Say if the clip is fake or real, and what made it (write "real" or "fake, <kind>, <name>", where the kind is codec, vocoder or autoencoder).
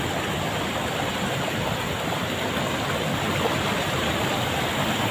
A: real